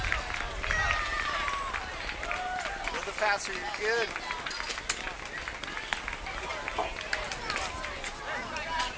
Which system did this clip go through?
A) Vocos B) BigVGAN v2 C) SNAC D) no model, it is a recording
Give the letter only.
D